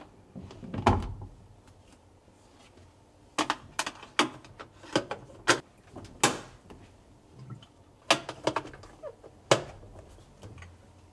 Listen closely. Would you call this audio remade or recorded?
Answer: recorded